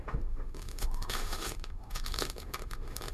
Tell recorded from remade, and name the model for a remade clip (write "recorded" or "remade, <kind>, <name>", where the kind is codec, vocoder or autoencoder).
remade, autoencoder, DAC-VAE